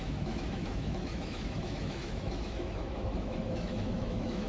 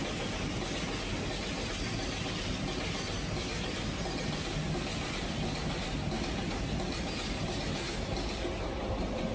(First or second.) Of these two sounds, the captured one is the second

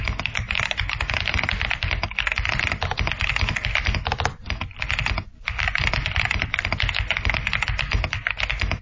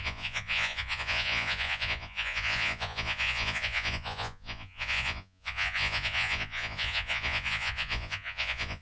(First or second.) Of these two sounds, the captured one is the first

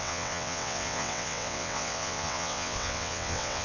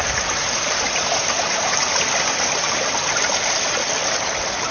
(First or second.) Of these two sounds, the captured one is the second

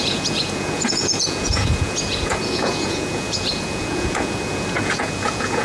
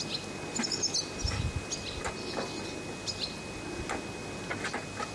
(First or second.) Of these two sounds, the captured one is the second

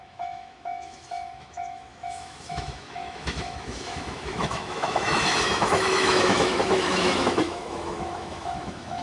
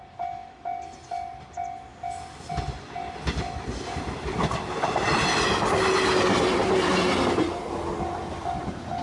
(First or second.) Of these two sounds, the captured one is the second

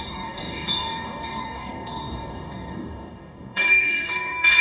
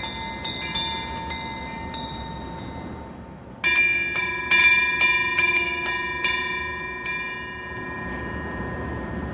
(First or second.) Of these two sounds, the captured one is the second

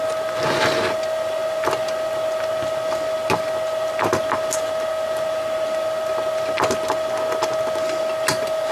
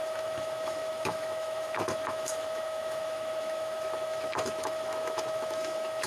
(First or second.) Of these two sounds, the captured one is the first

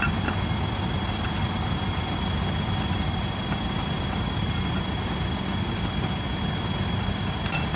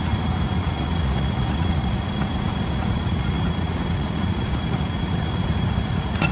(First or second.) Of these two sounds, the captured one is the first